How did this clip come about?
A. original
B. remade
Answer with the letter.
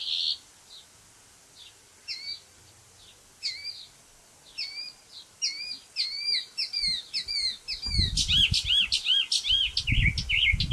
A